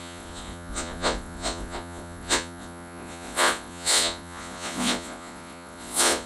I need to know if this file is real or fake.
fake